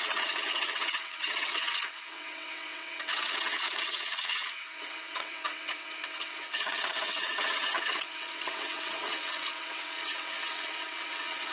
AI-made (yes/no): yes